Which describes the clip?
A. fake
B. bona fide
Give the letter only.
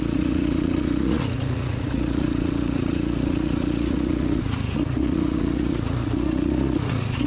A